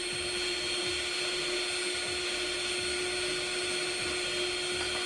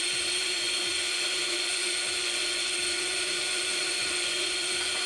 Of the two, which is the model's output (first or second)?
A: second